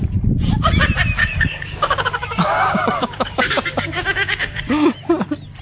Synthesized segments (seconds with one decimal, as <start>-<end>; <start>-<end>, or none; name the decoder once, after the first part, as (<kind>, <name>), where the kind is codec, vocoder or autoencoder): 1.2-4.6 (codec, DAC)